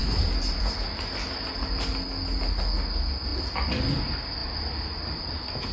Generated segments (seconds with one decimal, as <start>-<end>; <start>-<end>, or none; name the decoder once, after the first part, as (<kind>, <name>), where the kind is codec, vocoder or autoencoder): 0.0-0.6 (vocoder, BigVGAN v2); 4.4-5.2

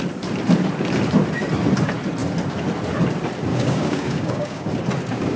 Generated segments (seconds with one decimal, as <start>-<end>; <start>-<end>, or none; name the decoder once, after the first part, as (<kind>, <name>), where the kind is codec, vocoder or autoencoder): 3.5-4.7 (codec, DAC)

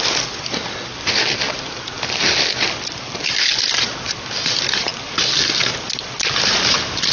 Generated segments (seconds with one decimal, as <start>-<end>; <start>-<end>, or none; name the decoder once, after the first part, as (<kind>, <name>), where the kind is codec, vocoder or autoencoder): none

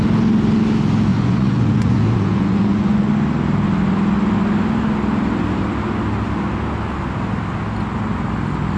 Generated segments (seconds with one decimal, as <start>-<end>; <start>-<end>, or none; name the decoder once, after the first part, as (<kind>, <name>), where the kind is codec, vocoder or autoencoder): 1.1-3.1 (vocoder, Vocos)